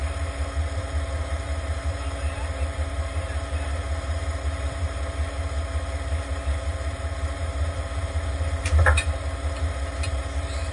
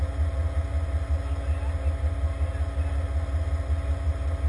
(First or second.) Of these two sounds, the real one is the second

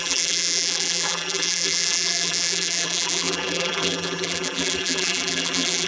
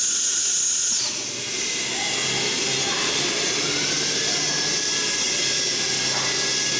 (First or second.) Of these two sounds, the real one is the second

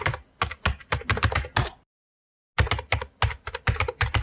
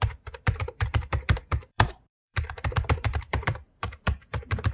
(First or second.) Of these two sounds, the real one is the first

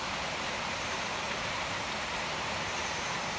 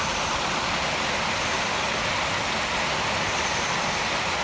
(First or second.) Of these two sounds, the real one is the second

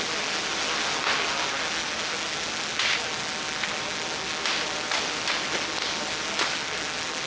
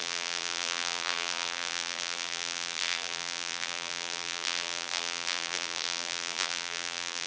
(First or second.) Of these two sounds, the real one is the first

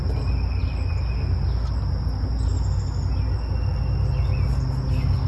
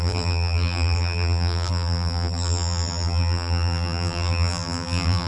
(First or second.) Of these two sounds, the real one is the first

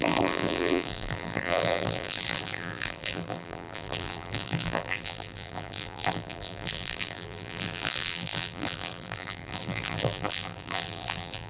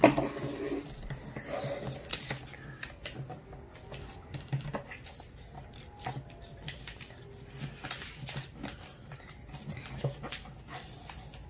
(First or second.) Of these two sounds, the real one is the second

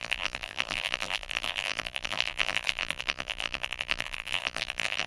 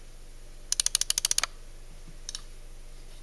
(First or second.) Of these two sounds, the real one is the second